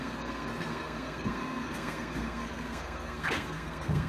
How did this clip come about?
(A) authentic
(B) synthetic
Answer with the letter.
B